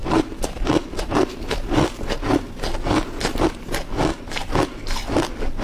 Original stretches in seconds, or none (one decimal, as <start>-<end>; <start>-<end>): 0.0-5.6